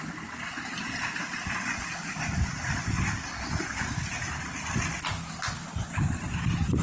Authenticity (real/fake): real